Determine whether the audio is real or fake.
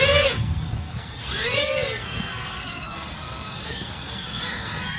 fake